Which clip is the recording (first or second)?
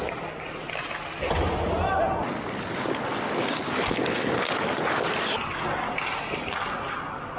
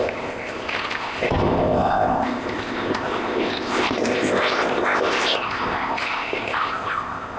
first